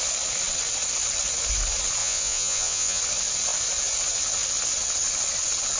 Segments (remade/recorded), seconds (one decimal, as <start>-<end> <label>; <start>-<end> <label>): 0.0-2.0 recorded; 2.0-3.0 remade; 3.0-5.8 recorded